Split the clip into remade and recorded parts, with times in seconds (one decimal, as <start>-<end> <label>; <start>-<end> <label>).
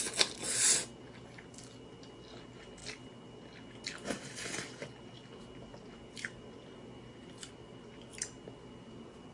0.0-9.3 recorded